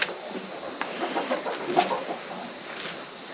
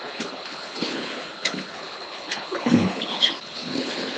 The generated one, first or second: second